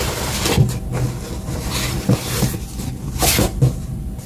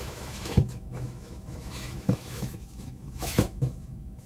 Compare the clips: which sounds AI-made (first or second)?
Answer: second